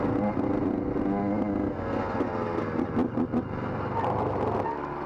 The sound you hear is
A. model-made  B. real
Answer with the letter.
B